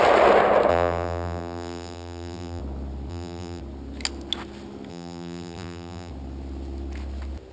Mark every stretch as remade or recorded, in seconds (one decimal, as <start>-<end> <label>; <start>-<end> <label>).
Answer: 0.0-0.7 recorded; 0.7-2.6 remade; 2.6-3.1 recorded; 3.1-3.6 remade; 3.6-4.9 recorded; 4.9-6.1 remade; 6.1-7.5 recorded